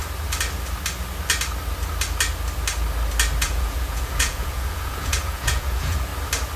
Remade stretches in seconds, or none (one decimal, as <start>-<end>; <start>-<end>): 3.4-6.1